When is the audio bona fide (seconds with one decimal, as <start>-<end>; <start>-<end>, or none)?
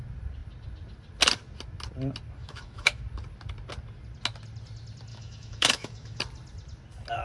0.0-2.4; 3.0-5.1; 6.2-7.2